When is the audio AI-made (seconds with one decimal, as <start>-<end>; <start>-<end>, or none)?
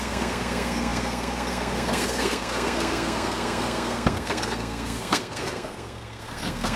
0.0-6.8